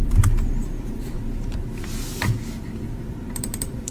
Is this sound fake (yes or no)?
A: yes